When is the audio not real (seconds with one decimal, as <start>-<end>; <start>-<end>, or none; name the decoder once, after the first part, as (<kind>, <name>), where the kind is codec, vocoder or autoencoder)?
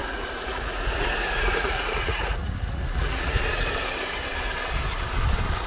0.0-3.4 (vocoder, Vocos)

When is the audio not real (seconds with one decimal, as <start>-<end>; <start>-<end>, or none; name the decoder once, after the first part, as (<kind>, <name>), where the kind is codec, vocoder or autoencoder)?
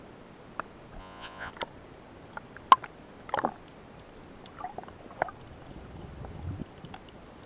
1.0-1.5 (vocoder, Vocos)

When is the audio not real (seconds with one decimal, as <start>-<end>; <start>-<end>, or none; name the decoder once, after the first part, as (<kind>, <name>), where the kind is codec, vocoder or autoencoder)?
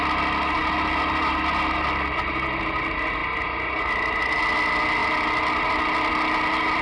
none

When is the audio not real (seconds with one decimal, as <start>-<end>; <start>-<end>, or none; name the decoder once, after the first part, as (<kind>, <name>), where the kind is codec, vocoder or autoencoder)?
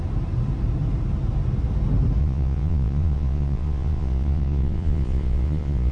2.2-5.9 (vocoder, Vocos)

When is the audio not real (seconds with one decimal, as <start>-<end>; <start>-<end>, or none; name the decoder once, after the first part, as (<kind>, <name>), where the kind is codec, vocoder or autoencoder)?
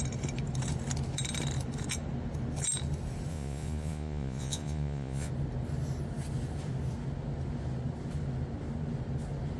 3.3-5.3 (vocoder, Vocos)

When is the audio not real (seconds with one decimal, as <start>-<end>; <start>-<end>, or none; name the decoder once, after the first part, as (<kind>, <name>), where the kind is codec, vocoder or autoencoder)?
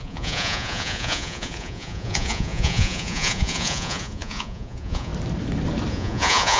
0.0-5.1 (vocoder, Vocos); 5.9-6.6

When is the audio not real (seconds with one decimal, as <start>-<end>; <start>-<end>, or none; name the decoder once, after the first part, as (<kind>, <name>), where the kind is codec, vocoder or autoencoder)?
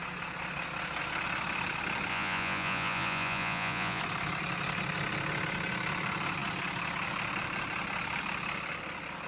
2.1-4.0 (vocoder, Vocos)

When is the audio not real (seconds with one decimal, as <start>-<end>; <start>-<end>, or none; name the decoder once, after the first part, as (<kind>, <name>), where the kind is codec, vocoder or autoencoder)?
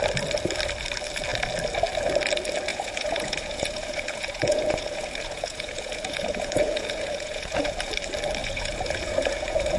2.7-7.9 (vocoder, Vocos); 8.4-9.8